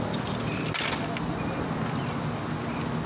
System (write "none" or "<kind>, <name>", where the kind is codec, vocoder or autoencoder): none